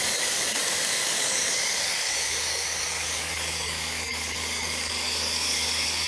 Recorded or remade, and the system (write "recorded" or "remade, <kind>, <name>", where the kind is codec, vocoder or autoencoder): remade, codec, DAC